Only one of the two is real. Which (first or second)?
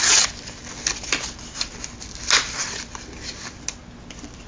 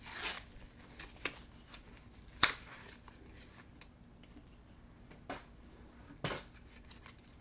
first